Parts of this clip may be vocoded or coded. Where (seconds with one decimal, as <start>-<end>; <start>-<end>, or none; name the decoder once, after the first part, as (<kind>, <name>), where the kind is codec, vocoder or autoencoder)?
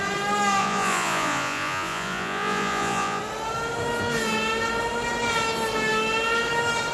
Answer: 0.6-3.2 (vocoder, Vocos)